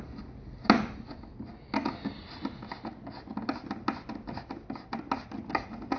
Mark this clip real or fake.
real